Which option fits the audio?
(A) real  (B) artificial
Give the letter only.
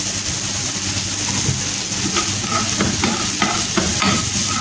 A